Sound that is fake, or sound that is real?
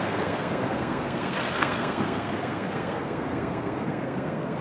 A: fake